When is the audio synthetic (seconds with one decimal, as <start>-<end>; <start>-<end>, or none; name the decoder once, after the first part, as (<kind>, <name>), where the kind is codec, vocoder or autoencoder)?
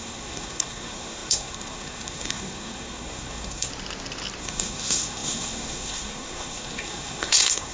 0.0-3.7 (codec, SNAC); 4.4-7.7